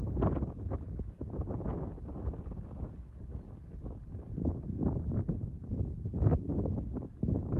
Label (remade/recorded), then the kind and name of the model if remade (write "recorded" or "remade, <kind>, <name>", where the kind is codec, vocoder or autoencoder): recorded